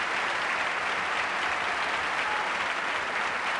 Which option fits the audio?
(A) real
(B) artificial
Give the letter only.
A